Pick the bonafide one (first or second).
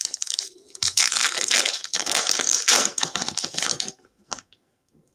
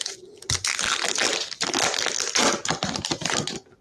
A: second